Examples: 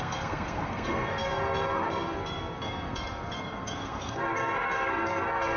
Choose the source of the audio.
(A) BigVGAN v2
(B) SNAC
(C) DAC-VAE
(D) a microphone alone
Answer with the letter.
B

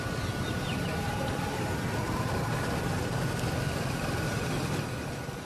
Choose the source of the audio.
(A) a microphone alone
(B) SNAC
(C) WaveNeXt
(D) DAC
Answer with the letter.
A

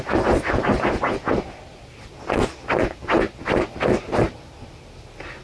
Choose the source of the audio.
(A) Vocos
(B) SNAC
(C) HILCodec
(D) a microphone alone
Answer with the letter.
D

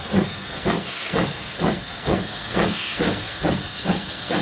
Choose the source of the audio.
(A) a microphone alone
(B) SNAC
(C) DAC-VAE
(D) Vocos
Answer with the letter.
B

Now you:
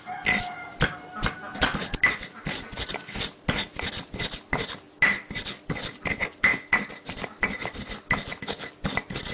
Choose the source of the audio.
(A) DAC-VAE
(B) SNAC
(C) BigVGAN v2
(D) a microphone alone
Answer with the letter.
D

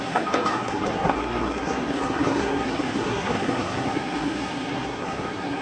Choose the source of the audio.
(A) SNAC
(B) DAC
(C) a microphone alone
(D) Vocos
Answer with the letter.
A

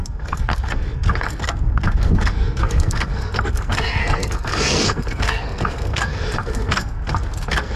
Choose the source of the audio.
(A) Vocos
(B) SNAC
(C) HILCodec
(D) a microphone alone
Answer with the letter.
B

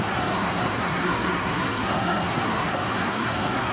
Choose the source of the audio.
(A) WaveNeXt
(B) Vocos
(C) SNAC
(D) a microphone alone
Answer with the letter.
C